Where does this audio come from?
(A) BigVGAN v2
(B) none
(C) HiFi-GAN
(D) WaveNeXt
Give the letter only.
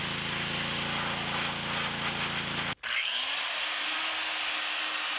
B